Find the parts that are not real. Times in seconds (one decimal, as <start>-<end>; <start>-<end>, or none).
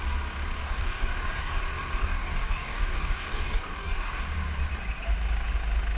0.6-1.6; 2.0-4.2